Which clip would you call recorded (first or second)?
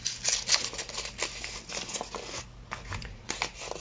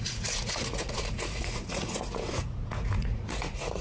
first